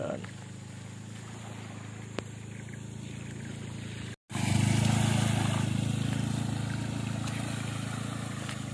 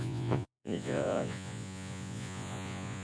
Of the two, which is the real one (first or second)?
first